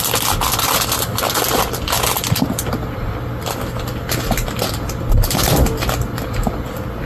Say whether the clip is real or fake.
real